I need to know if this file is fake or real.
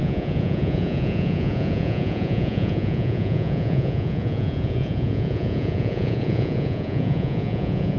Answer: fake